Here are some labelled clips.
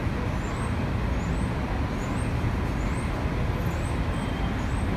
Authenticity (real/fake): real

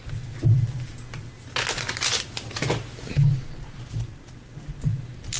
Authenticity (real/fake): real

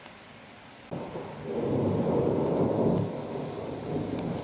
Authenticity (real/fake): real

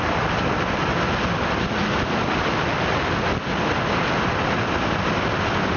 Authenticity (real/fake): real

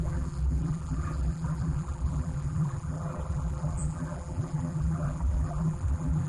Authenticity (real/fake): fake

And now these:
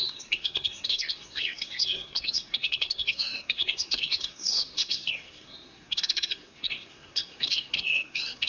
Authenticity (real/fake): fake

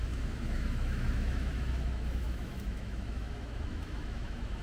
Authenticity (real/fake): fake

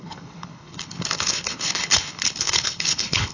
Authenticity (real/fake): fake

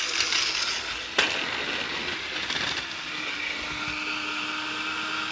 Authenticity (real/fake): real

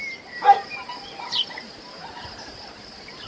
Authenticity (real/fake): fake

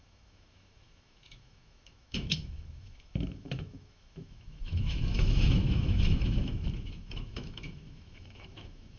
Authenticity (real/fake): fake